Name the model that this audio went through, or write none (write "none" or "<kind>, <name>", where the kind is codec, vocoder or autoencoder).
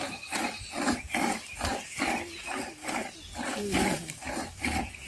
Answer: none